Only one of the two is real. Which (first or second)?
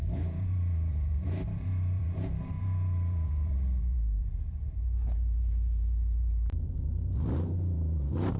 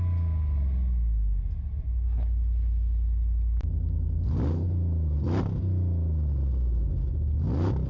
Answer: second